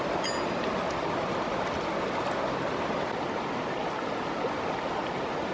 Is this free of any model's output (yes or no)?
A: yes